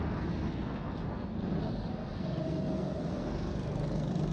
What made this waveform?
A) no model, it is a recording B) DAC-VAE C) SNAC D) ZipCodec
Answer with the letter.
C